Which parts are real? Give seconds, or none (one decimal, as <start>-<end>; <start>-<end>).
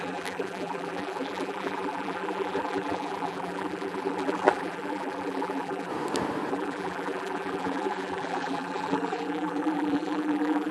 5.9-6.5